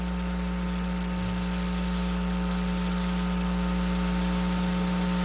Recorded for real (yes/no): yes